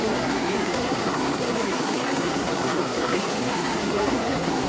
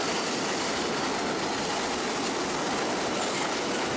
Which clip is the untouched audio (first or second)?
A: second